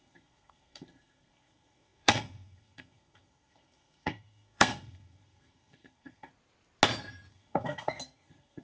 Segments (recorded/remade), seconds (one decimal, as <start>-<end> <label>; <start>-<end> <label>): 0.0-6.3 remade; 6.3-7.3 recorded; 7.3-8.6 remade